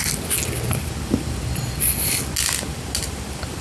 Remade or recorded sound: recorded